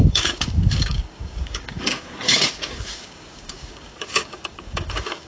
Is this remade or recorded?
remade